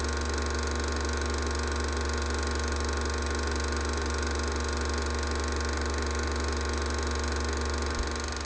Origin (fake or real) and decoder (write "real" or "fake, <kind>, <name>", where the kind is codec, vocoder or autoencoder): real